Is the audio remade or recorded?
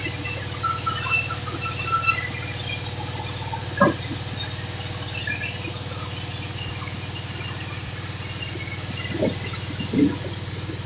recorded